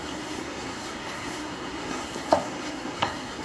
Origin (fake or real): fake